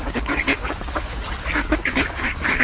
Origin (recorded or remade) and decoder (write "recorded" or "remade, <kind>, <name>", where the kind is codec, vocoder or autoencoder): remade, codec, DAC